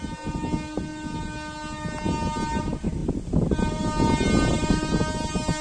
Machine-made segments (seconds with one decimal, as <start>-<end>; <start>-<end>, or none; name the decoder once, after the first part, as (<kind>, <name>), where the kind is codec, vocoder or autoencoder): none